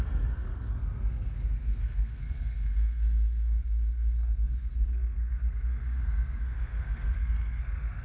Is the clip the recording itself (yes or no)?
no